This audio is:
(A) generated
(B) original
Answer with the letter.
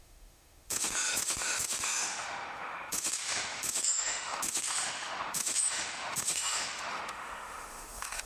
A